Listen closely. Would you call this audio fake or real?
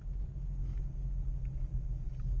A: real